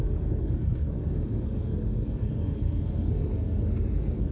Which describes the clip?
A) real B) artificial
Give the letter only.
B